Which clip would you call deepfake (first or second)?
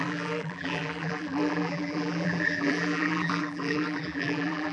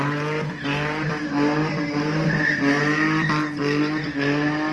first